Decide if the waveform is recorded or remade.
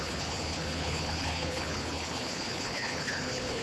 remade